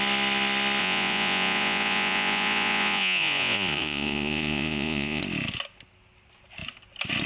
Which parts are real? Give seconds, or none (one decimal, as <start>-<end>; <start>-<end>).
0.0-0.8; 5.2-7.3